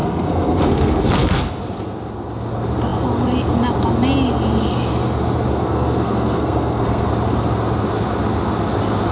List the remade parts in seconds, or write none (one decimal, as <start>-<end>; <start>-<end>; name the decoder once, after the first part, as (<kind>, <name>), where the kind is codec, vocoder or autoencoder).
0.0-1.6 (codec, SNAC); 5.5-7.1